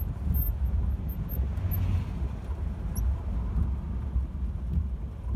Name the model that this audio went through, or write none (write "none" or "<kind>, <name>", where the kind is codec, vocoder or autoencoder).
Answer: none